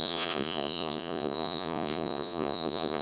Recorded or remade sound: remade